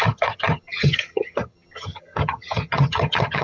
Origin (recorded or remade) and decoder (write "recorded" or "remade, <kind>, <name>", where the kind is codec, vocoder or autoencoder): remade, vocoder, HiFi-GAN